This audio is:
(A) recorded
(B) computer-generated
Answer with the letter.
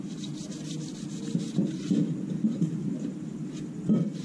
A